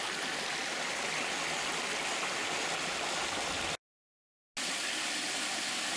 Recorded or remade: recorded